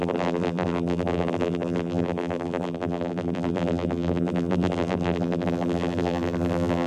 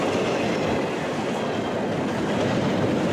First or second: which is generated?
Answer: first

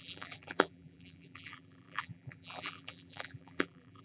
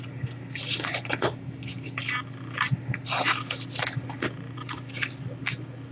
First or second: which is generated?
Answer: first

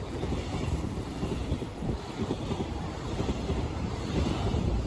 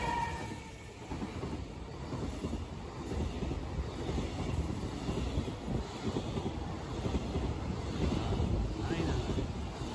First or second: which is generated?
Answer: first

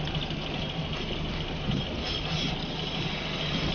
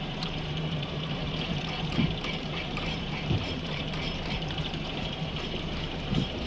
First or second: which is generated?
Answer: second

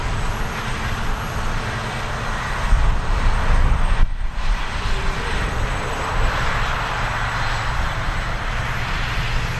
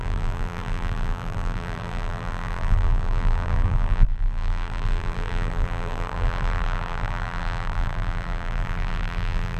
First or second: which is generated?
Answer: second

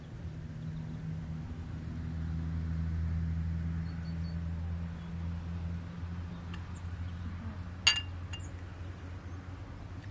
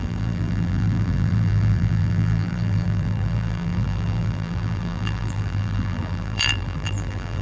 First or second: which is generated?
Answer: second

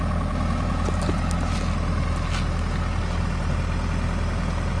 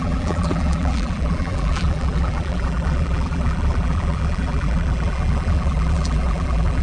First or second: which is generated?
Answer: second